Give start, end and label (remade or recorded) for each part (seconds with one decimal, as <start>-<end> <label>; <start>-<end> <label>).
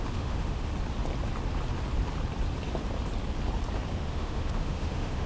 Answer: 0.0-0.7 remade; 0.7-3.9 recorded; 3.9-5.3 remade